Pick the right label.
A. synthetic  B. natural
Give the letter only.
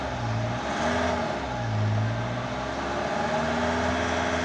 B